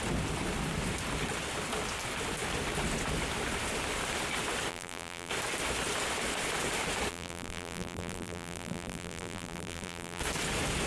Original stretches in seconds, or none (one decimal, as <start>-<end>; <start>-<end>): 0.0-4.7; 5.3-7.1; 10.2-10.9